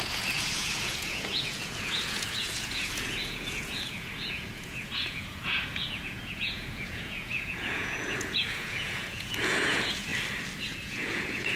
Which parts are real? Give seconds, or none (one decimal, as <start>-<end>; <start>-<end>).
10.1-10.6